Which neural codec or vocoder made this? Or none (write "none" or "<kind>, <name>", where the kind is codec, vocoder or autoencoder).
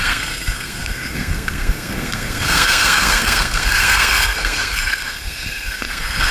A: codec, SNAC